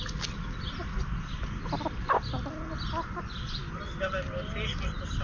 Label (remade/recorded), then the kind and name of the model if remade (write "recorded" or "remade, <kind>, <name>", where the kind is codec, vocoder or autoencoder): recorded